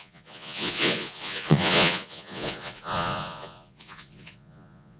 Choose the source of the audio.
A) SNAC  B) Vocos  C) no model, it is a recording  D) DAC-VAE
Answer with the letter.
B